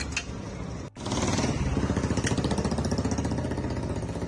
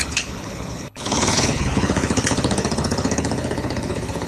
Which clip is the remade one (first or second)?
second